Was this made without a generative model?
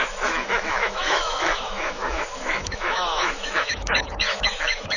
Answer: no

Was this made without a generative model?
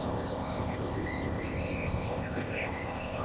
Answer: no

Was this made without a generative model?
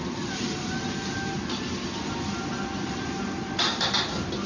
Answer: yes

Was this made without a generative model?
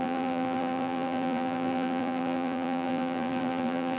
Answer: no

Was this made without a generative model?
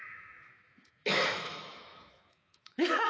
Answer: no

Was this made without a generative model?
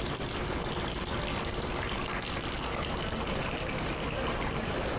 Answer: yes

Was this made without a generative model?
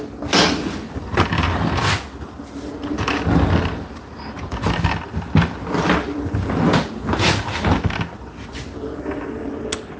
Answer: yes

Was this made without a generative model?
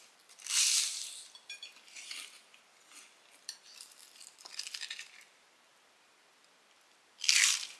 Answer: no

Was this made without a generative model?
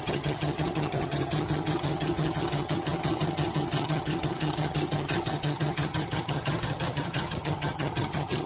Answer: no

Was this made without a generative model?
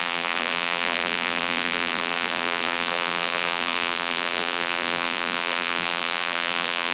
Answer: no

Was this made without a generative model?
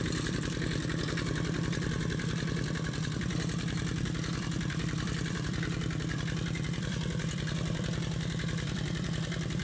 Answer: no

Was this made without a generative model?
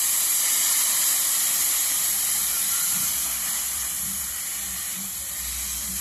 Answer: no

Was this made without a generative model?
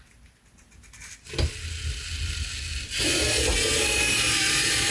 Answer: yes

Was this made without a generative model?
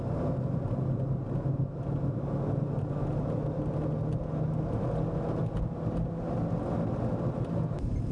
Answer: yes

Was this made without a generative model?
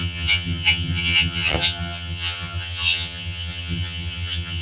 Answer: no